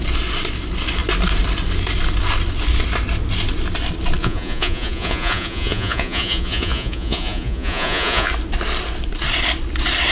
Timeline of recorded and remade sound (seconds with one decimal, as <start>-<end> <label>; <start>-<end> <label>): 0.0-4.2 recorded; 4.2-8.3 remade; 8.3-10.1 recorded